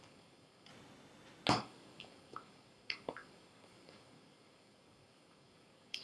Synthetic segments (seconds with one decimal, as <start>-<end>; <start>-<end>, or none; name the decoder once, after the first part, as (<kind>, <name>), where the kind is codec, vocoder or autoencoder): 0.0-0.7 (codec, DAC); 1.5-6.0